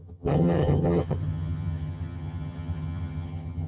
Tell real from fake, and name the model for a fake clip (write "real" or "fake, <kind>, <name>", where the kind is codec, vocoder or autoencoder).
fake, vocoder, HiFi-GAN